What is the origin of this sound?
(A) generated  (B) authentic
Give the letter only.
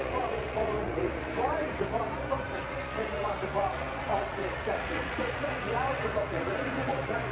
A